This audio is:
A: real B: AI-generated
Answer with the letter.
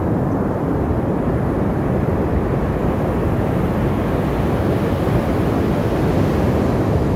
A